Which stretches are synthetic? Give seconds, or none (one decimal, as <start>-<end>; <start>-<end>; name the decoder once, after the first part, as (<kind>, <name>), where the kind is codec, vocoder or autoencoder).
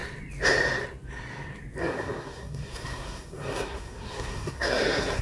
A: 1.8-5.2 (codec, SNAC)